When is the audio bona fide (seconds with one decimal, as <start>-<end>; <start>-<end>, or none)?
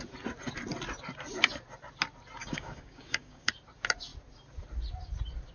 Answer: 0.0-2.4; 3.5-5.5